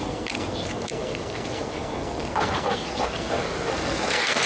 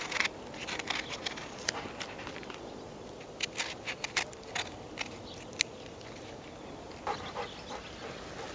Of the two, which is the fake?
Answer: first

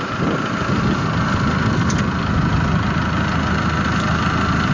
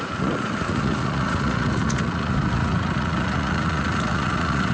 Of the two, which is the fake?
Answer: second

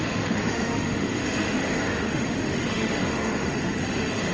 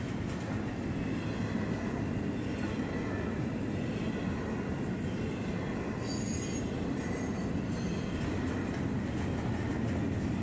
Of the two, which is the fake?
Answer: first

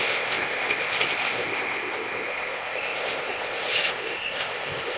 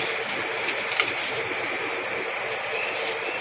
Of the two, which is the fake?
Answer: first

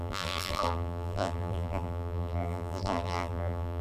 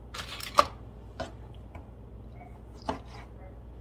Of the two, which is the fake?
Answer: first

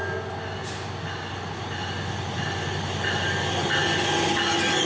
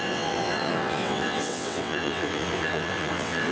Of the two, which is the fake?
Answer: second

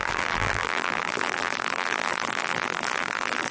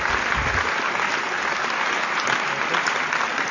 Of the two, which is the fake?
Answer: first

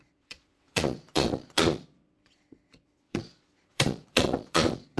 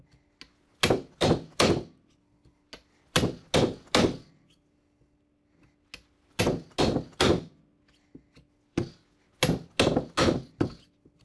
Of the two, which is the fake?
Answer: first